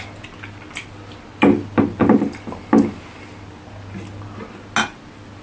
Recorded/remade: recorded